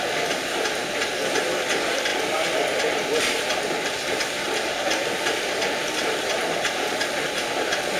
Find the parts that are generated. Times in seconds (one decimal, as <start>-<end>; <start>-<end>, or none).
none